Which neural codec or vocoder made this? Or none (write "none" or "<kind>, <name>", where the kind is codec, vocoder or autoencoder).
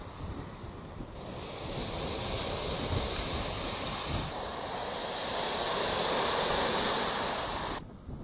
none